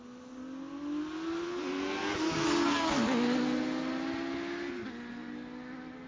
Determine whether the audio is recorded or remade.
recorded